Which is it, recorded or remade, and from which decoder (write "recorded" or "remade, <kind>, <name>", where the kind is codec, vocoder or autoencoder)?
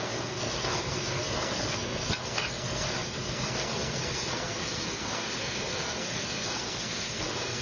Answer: remade, codec, SNAC